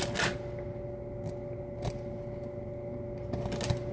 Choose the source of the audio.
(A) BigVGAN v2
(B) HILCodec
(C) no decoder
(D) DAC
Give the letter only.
C